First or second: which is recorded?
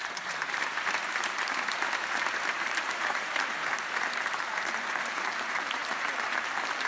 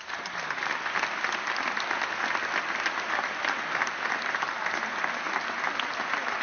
second